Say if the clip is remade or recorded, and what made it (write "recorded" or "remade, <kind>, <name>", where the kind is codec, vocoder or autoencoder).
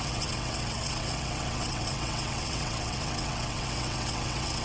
remade, vocoder, WaveNeXt